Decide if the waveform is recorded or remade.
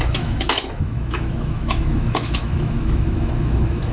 remade